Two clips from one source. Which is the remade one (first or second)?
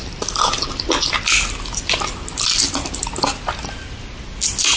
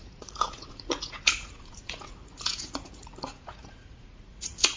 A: second